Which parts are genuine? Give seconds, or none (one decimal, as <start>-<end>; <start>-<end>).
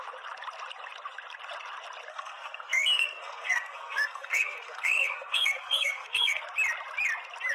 0.0-2.1; 6.4-7.5